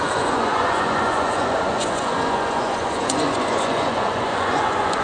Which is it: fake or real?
fake